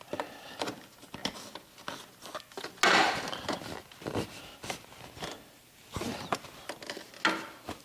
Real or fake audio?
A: real